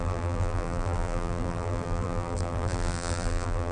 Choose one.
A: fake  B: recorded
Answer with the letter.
A